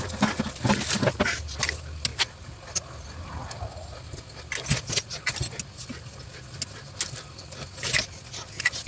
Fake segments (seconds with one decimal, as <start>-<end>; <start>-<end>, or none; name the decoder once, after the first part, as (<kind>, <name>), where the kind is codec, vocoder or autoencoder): none